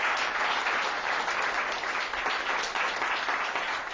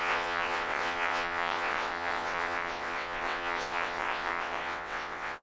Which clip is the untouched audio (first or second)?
first